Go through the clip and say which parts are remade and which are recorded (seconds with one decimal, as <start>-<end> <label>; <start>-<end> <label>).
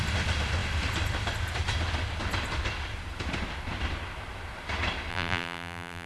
0.0-5.1 recorded; 5.1-6.1 remade